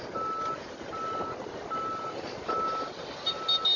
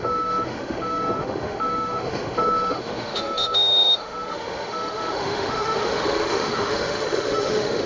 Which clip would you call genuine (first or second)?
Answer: first